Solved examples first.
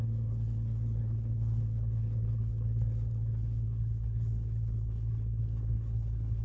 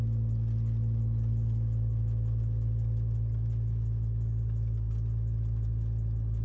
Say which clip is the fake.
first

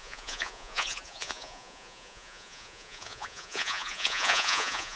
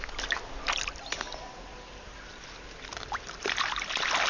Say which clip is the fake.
first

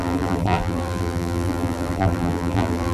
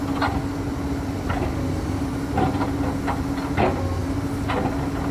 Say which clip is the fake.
first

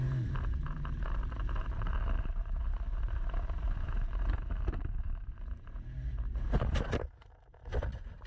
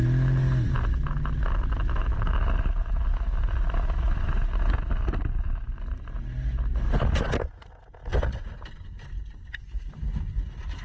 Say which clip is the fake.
first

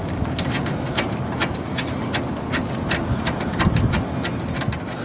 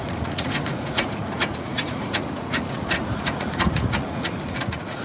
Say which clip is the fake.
second